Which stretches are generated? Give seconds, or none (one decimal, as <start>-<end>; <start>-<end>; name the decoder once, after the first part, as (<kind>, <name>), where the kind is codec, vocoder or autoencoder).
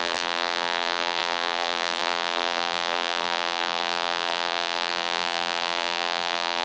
0.0-6.6 (vocoder, BigVGAN v2)